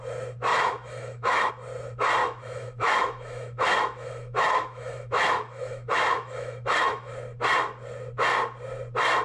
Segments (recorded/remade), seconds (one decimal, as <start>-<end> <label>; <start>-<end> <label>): 0.0-0.5 recorded; 0.5-1.5 remade; 1.5-2.2 recorded; 2.2-7.1 remade; 7.1-9.2 recorded